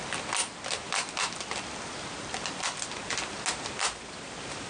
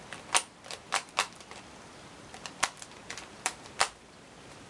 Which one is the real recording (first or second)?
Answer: first